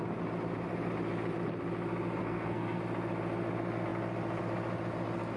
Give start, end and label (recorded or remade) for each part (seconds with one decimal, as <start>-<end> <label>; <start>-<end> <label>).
0.0-2.2 recorded; 2.2-2.8 remade; 2.8-5.4 recorded